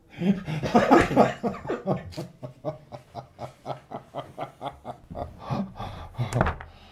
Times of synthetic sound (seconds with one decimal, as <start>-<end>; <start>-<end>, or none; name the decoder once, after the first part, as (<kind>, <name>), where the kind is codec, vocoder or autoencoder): 5.2-6.4 (vocoder, BigVGAN v2)